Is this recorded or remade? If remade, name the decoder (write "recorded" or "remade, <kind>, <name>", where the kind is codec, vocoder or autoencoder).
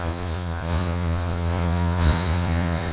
remade, vocoder, Vocos